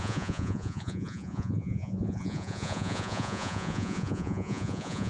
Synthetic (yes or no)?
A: yes